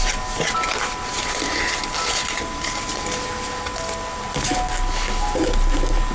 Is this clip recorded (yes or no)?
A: yes